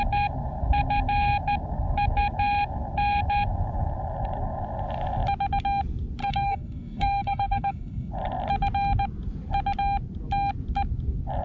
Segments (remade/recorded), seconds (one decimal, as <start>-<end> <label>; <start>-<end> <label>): 0.0-6.2 recorded; 6.2-8.1 remade; 8.1-11.4 recorded